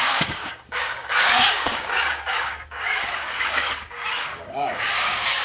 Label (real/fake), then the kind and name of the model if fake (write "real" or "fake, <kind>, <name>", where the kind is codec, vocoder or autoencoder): fake, codec, DAC